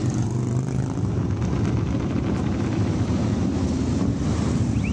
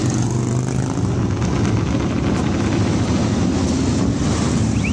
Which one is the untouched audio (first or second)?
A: second